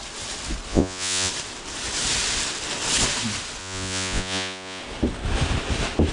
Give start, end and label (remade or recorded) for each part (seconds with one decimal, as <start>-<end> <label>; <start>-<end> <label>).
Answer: 0.0-0.7 recorded; 0.7-1.3 remade; 1.3-3.6 recorded; 3.6-4.8 remade; 4.8-6.1 recorded